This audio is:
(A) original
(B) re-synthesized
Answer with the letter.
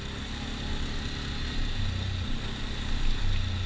A